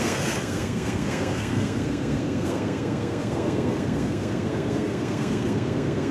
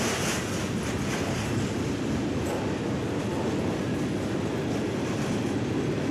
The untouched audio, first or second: second